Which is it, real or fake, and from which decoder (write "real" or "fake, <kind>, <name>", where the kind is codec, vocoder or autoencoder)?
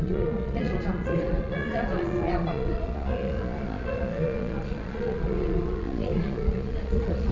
fake, vocoder, Vocos